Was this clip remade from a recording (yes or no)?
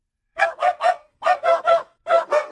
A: yes